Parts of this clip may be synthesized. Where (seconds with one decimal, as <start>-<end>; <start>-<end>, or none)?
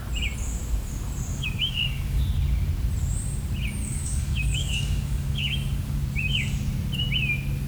1.3-2.2; 3.8-6.0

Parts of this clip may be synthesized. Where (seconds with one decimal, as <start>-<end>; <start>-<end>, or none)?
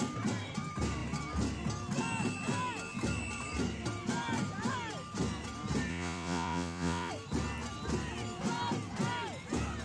5.9-7.1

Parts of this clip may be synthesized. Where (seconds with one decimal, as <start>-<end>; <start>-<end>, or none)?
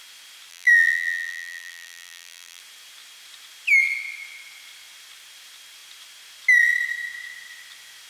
0.5-2.6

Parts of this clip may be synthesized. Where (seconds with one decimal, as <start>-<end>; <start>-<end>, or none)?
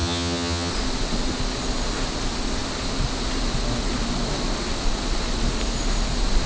0.0-0.7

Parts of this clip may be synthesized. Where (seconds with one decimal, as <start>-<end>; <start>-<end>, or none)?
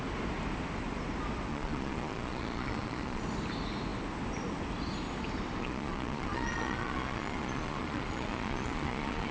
1.5-3.2; 5.6-9.3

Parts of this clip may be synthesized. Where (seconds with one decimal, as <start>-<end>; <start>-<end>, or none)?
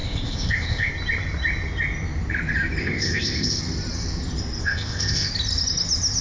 0.0-0.9; 2.8-3.6; 4.6-5.3